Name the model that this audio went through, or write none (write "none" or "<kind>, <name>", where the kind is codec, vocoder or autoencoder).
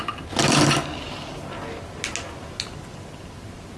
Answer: none